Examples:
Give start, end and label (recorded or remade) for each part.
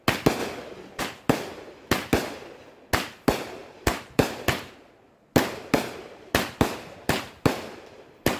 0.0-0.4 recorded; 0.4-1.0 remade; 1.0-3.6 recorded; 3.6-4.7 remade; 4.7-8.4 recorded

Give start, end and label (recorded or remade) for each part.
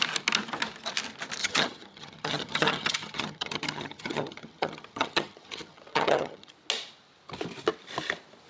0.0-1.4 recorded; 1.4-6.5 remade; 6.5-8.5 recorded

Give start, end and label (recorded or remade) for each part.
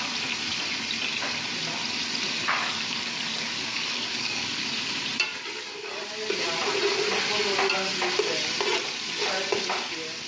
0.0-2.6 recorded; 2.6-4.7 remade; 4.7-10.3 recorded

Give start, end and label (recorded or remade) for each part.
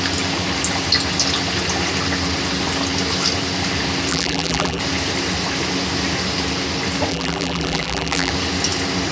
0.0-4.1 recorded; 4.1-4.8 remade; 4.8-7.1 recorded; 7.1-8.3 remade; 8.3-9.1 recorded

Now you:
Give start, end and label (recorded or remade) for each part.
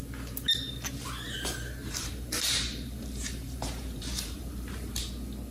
0.0-1.8 recorded; 1.8-5.1 remade; 5.1-5.5 recorded